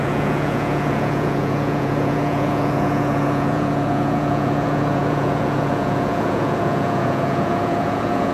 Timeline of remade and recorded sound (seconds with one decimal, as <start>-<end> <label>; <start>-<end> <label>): 0.0-8.3 remade